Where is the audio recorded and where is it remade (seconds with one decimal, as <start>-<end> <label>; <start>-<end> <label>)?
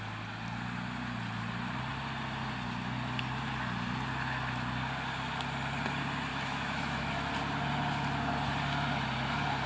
0.0-6.3 recorded; 6.3-7.3 remade; 7.3-9.7 recorded